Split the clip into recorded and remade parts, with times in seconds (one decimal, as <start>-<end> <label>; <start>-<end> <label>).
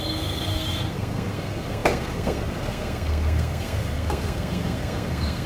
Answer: 0.0-5.5 remade